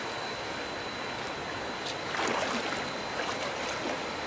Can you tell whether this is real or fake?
real